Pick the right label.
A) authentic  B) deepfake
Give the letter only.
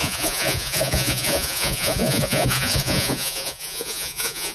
B